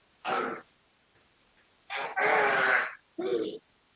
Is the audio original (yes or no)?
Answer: yes